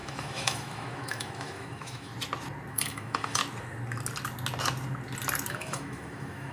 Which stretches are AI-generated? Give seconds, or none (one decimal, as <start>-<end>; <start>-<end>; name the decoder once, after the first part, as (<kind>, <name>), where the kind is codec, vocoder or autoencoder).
0.0-2.1 (autoencoder, DAC-VAE); 2.7-3.4; 5.5-6.5